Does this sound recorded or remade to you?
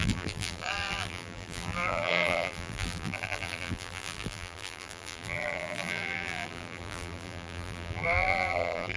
remade